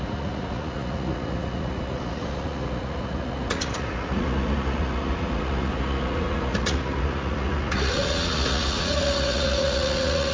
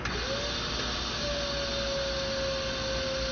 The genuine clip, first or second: second